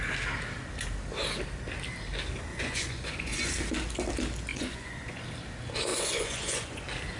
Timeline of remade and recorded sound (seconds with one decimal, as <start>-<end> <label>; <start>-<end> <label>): 0.0-2.5 recorded; 2.5-3.5 remade; 3.5-4.5 recorded; 4.5-5.2 remade; 5.2-5.9 recorded; 5.9-6.8 remade; 6.8-7.2 recorded

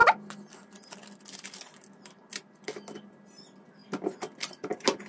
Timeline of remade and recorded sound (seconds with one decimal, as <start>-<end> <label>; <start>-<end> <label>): 0.0-3.1 remade; 3.1-5.1 recorded

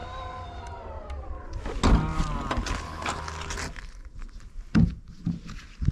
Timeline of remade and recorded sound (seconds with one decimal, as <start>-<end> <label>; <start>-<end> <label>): 0.0-5.9 recorded

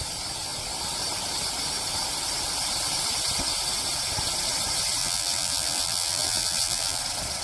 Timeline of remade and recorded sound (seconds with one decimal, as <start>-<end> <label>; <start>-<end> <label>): 0.0-5.0 recorded; 5.0-7.0 remade; 7.0-7.4 recorded

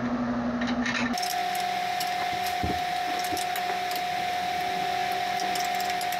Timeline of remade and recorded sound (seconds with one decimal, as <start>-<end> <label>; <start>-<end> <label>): 0.0-6.2 recorded

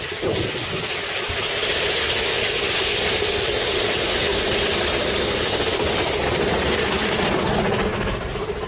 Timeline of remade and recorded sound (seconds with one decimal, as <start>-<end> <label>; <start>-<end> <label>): 0.0-8.7 recorded

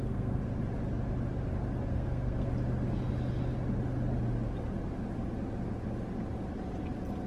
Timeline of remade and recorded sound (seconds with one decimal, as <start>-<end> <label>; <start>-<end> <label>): 0.0-0.4 remade; 0.4-1.9 recorded; 1.9-2.5 remade; 2.5-7.3 recorded